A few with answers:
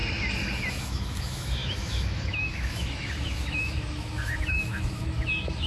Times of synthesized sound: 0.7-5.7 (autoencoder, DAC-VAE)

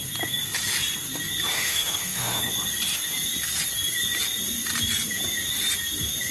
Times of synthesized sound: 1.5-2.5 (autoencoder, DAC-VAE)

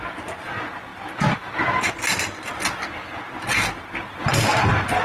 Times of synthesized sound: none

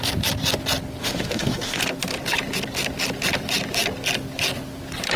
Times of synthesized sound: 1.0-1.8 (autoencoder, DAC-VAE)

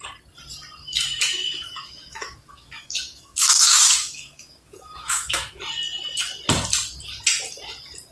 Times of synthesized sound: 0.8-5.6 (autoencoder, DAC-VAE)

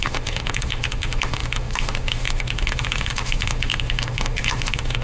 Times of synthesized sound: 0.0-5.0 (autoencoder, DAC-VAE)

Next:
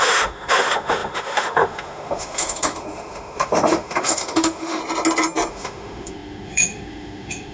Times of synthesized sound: 0.0-4.8 (autoencoder, DAC-VAE); 5.5-7.5